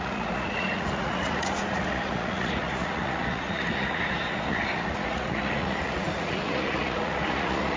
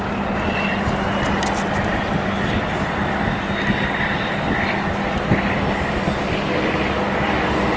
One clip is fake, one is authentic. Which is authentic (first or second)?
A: second